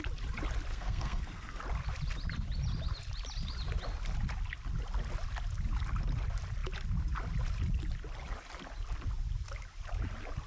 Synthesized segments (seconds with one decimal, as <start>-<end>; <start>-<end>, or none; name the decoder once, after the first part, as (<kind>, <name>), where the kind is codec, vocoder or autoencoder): 0.7-1.6 (codec, SNAC)

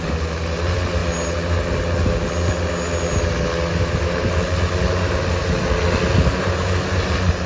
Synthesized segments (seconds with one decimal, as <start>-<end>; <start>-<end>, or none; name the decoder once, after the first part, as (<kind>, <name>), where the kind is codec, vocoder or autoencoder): none

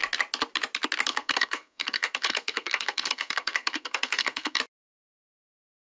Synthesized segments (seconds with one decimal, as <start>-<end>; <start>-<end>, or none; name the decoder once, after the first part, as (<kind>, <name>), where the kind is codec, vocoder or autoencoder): 1.1-4.6 (codec, SNAC)

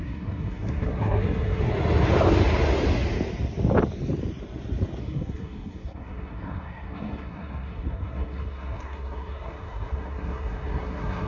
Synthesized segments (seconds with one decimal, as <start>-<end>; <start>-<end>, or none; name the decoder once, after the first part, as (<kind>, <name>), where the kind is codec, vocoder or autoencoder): 0.0-1.7 (codec, SNAC); 5.0-11.3

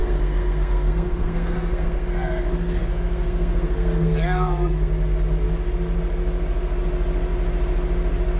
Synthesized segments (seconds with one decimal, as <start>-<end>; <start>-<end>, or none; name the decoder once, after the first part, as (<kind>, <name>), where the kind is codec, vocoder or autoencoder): 0.0-4.9 (codec, SNAC)

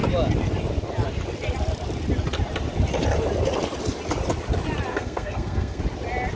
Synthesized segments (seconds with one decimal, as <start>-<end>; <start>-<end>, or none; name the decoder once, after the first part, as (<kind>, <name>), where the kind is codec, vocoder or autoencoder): 4.9-5.8 (codec, SNAC)